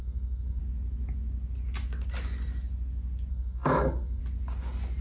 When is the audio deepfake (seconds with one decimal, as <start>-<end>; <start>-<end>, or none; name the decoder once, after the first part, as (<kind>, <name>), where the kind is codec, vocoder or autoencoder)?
0.0-0.6 (codec, SNAC); 3.3-4.2